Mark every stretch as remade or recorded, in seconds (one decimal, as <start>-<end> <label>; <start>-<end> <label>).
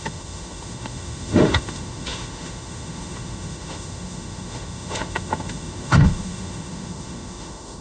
0.0-7.8 remade